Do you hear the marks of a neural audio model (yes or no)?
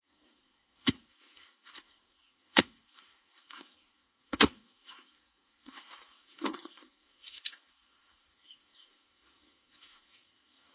yes